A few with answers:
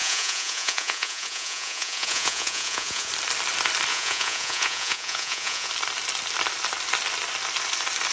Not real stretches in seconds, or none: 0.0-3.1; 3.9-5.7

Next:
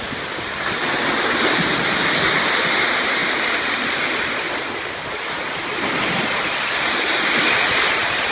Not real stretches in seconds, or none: none

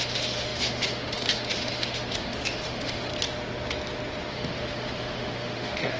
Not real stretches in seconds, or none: 0.0-3.1; 4.3-6.0

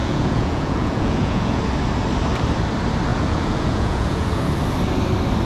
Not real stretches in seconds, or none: 0.0-1.6; 3.1-4.4